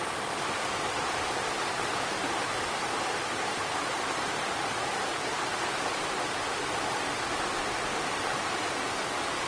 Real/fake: real